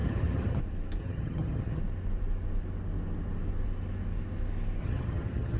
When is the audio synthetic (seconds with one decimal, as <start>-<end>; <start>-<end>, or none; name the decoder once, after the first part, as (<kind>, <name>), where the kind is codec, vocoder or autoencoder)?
0.0-0.6 (vocoder, HiFi-GAN); 1.0-1.8; 4.8-5.6